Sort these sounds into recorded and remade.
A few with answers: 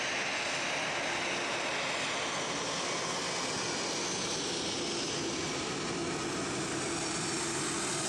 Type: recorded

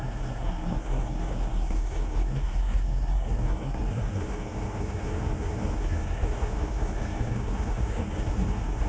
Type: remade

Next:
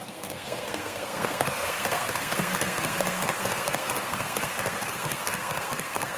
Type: remade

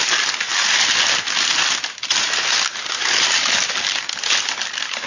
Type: recorded